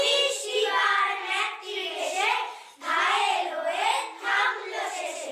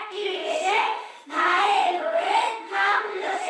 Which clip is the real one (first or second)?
first